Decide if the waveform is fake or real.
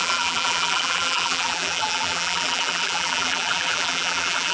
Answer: fake